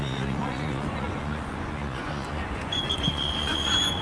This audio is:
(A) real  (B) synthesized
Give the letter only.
B